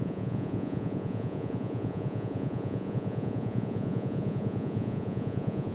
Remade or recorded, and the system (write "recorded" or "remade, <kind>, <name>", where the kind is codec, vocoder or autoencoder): remade, vocoder, Vocos